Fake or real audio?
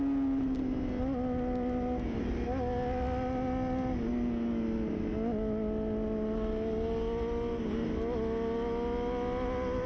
real